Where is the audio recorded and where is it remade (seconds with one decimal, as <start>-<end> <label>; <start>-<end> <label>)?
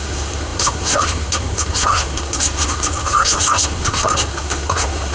0.0-5.1 remade